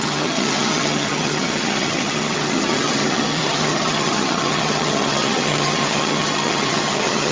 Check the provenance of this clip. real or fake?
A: fake